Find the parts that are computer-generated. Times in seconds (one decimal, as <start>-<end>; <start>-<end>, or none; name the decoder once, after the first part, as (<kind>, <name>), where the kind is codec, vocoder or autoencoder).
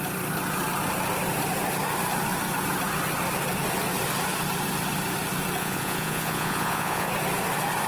5.6-7.1 (vocoder, Vocos)